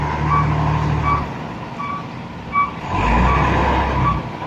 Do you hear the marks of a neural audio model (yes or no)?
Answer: no